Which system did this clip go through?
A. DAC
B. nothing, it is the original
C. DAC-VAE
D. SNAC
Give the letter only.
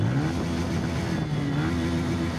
B